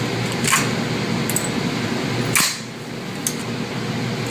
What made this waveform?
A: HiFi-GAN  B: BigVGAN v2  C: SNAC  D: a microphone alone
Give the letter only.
D